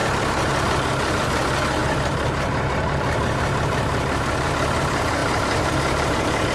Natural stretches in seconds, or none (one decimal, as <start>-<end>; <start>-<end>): 1.2-1.8; 4.5-5.2

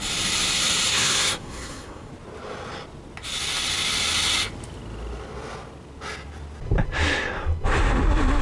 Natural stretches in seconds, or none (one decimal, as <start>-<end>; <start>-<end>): 0.0-0.9; 2.1-8.4

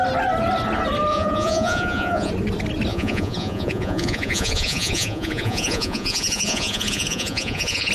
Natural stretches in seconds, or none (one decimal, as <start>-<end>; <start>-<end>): 0.0-1.1; 2.3-2.9

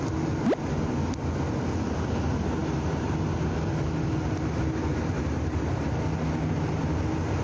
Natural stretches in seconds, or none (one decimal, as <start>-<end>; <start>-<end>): 0.0-7.4

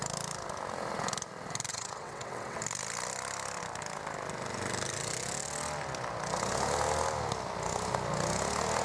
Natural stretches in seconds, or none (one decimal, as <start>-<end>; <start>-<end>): 0.0-1.7; 2.6-8.8

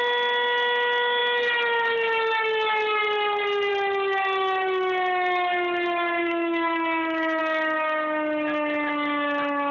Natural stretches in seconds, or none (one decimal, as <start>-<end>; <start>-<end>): 0.0-6.2; 7.4-9.7